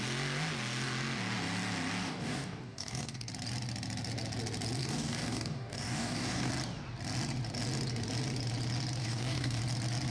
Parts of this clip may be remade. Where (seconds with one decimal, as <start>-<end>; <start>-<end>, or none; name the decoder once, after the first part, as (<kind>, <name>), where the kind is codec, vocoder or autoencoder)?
2.0-3.3 (codec, DAC); 4.8-6.5; 9.0-9.6